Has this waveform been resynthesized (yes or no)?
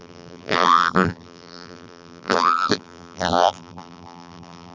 yes